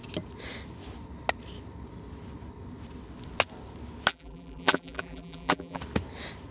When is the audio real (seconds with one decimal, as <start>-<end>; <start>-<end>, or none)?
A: 0.0-4.1; 5.8-6.5